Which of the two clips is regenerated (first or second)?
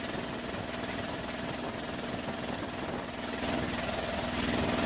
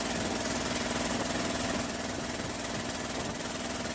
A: second